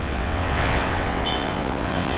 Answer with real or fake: fake